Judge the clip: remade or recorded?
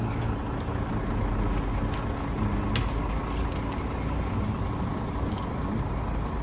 recorded